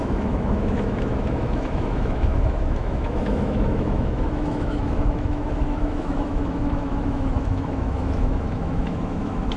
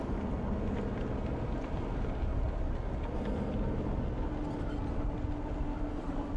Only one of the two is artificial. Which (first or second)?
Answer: first